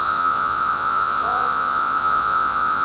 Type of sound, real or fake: fake